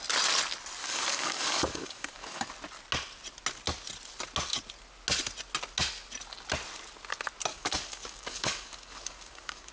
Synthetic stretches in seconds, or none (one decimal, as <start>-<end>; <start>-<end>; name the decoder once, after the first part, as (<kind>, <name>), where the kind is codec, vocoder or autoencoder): 0.8-2.5 (codec, DAC); 7.5-9.7

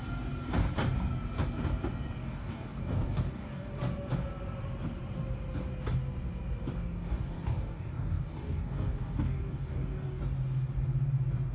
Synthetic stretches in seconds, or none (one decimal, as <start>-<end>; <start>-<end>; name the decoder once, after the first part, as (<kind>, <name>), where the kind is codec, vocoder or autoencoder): 2.2-3.8 (codec, DAC); 6.8-10.2

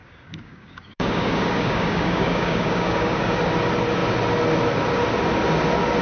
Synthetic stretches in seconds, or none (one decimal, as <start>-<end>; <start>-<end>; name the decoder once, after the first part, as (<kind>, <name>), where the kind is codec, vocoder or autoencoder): 0.0-3.4 (codec, DAC)

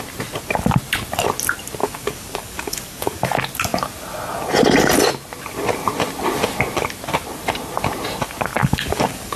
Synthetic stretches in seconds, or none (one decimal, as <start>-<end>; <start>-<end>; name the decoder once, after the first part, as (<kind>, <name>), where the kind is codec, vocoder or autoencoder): 1.8-3.3 (codec, DAC); 8.6-9.4

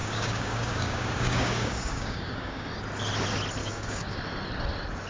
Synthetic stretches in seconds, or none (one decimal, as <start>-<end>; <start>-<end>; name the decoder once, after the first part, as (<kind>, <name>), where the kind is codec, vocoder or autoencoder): 0.0-2.7 (codec, DAC); 3.6-4.2

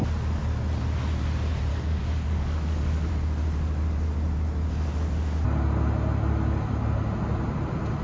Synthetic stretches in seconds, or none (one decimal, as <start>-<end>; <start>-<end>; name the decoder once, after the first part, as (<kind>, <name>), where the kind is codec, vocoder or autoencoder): 1.7-3.1 (codec, DAC)

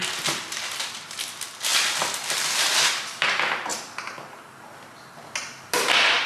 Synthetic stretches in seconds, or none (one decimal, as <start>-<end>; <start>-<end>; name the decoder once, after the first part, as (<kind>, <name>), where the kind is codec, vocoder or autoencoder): none